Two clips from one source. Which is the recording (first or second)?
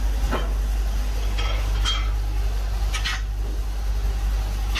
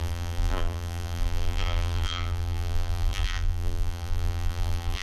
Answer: first